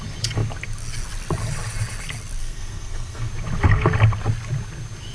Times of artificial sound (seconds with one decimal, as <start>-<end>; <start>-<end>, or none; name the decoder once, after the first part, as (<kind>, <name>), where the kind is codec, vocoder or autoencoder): 2.4-3.3 (codec, SNAC)